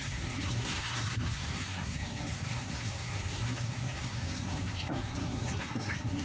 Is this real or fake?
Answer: fake